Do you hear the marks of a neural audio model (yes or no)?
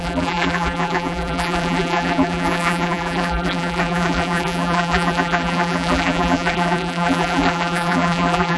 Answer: yes